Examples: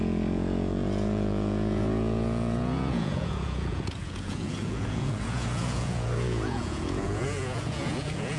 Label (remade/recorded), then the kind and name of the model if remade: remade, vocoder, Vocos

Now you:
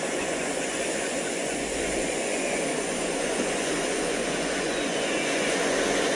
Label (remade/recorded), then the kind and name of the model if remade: remade, vocoder, Vocos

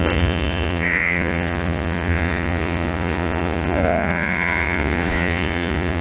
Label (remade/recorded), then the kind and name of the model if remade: remade, vocoder, Vocos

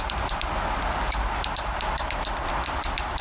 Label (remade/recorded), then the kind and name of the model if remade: recorded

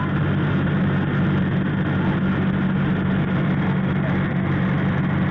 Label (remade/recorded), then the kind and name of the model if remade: recorded